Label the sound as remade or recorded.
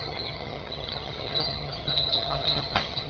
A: remade